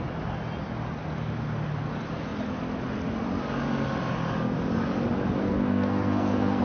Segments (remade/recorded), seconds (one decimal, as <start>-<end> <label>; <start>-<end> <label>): 0.0-5.4 recorded; 5.4-6.6 remade